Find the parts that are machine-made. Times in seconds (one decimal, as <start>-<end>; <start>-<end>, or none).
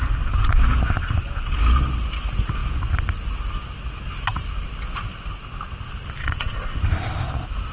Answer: 6.2-6.8